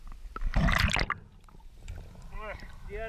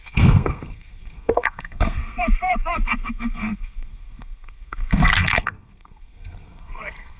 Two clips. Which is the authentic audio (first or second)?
first